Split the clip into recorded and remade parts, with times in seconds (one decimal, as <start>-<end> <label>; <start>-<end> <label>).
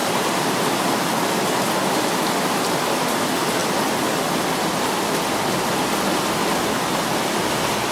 0.0-0.9 remade; 0.9-7.9 recorded